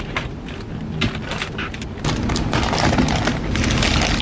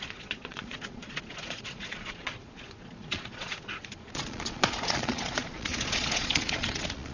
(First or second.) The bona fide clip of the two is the first